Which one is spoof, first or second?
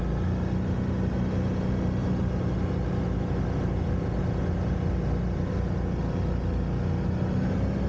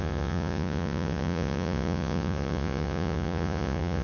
second